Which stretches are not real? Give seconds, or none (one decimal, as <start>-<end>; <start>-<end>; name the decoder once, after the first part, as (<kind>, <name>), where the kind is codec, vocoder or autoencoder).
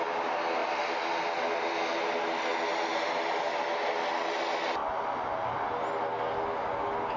none